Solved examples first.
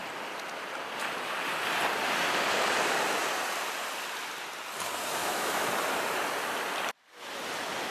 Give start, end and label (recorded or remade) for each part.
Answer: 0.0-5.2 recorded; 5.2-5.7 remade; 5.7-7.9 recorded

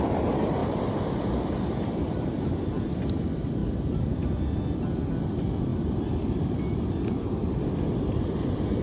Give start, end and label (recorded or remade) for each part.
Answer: 0.0-3.6 remade; 3.6-5.2 recorded; 5.2-8.8 remade

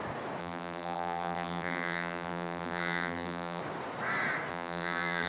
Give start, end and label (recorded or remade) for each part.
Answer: 0.0-0.4 recorded; 0.4-3.6 remade; 3.6-4.5 recorded; 4.5-5.3 remade

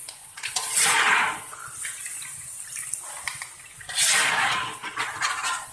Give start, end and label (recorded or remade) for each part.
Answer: 0.0-1.6 remade; 1.6-4.3 recorded; 4.3-5.7 remade